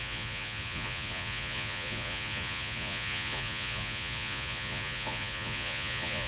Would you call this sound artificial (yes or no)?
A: yes